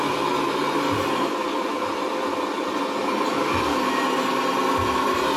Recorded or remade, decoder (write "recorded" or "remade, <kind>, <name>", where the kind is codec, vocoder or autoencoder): recorded